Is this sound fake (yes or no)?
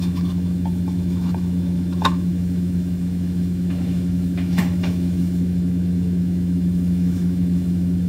yes